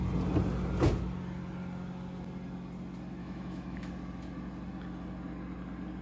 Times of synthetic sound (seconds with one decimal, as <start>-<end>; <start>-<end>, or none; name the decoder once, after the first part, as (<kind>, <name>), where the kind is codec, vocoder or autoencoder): 3.2-3.9 (autoencoder, DAC-VAE)